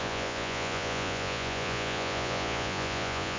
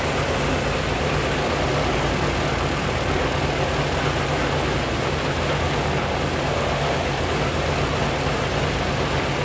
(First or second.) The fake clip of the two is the first